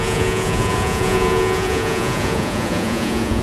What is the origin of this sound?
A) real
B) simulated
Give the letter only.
B